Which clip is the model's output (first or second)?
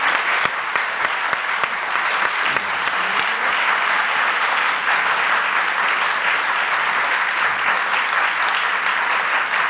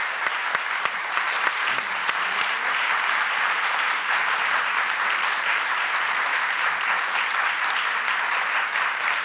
second